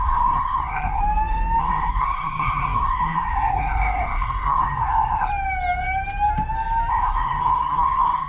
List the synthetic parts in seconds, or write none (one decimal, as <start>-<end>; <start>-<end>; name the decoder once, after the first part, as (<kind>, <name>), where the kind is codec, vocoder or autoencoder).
0.0-1.0 (codec, SNAC); 1.6-5.3; 6.9-8.3